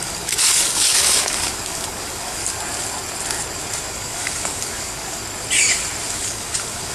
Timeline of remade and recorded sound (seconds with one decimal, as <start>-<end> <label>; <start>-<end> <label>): 0.0-2.4 remade; 2.4-3.9 recorded; 3.9-5.2 remade; 5.2-6.2 recorded; 6.2-6.9 remade